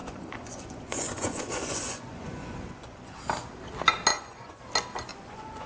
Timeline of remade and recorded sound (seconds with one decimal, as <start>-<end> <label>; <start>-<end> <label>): 0.0-3.2 remade; 3.2-4.1 recorded; 4.1-4.6 remade; 4.6-5.1 recorded; 5.1-5.7 remade

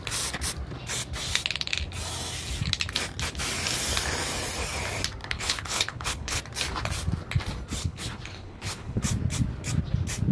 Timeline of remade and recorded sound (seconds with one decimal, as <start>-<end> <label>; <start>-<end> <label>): 0.0-5.2 recorded; 5.2-6.4 remade; 6.4-7.8 recorded; 7.8-9.0 remade; 9.0-10.3 recorded

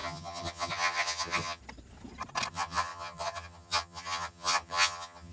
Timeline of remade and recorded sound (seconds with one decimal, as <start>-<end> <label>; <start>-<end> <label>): 0.0-1.6 remade; 1.6-2.5 recorded; 2.5-5.3 remade

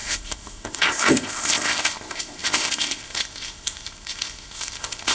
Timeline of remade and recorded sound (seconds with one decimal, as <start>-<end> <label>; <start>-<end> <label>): 0.0-5.1 remade

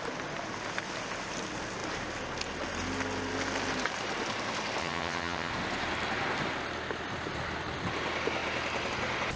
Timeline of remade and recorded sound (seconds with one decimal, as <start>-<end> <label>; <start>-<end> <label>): 0.0-4.8 recorded; 4.8-5.5 remade; 5.5-9.4 recorded

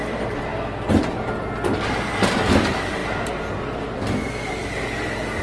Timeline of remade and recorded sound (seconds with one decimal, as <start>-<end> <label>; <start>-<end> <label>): 0.0-5.4 recorded